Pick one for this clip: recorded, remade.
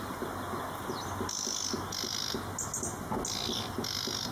recorded